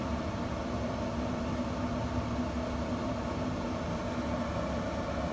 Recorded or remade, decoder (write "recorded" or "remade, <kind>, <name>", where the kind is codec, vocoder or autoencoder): recorded